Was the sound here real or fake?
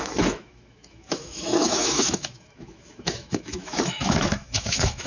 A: fake